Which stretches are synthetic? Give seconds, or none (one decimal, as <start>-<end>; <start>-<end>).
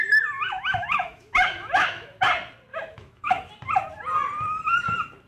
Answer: 0.5-2.3; 2.7-3.5